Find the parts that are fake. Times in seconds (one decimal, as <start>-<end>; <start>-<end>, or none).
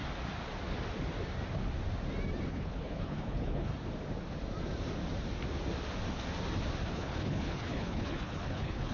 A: 2.5-3.7; 6.9-8.9